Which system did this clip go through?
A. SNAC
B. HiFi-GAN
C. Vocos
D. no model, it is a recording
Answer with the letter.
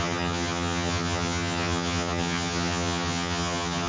B